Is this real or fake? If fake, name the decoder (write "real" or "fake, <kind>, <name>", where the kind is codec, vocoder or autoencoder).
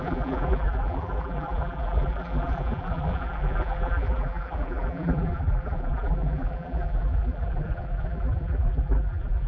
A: fake, vocoder, BigVGAN v2